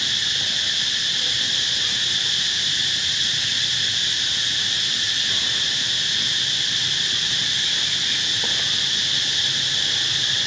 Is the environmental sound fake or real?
real